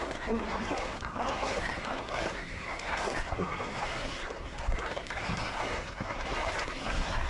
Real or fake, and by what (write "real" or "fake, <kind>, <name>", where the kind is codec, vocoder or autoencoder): fake, codec, SNAC